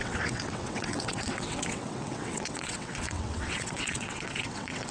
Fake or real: fake